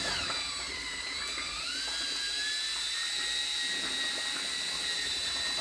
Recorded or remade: recorded